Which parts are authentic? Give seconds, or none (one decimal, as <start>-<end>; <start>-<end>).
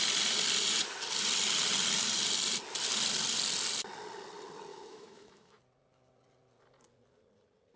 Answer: 0.0-4.7; 5.6-7.8